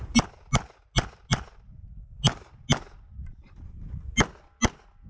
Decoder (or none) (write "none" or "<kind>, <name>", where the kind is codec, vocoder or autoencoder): none